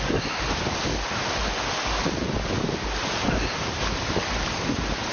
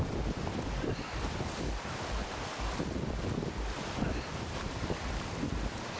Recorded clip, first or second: first